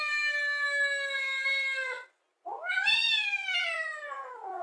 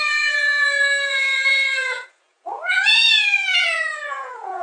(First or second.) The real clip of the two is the first